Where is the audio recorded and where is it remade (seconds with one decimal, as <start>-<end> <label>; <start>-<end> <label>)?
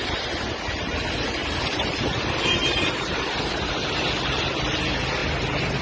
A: 0.0-1.4 recorded; 1.4-3.9 remade; 3.9-5.8 recorded